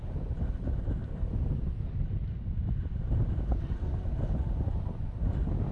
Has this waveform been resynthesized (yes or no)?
no